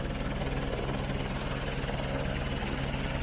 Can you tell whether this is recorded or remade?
recorded